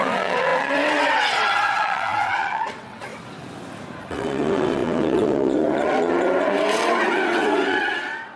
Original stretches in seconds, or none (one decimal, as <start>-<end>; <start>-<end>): 3.1-4.0

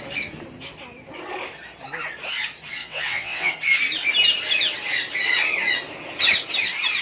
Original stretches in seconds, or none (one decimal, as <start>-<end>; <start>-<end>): 0.0-2.8; 3.5-7.0

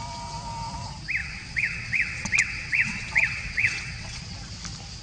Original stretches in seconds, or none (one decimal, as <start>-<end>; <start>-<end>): 0.0-1.2; 4.2-5.0